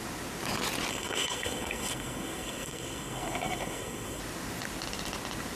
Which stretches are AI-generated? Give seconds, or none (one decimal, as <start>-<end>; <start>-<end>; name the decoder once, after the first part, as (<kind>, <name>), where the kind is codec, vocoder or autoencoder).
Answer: 0.9-4.2 (codec, SNAC)